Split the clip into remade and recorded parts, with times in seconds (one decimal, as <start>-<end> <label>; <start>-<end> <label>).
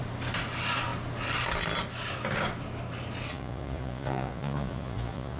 0.0-3.3 recorded; 3.3-5.4 remade